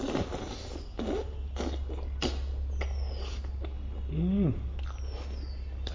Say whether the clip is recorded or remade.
recorded